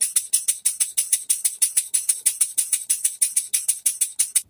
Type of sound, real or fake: real